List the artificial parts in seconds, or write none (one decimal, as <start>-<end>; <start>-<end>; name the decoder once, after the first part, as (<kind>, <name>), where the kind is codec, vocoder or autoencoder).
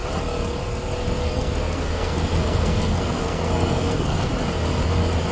1.2-4.3 (codec, SNAC)